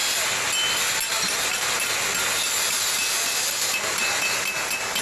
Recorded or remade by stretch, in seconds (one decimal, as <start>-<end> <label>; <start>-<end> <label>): 0.0-5.0 recorded